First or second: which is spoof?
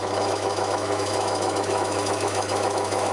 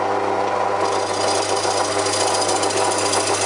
first